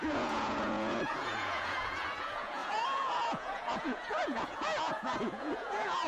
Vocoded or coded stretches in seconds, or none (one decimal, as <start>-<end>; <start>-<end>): 0.0-6.1